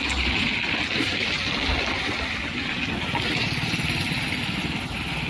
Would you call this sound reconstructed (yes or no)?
no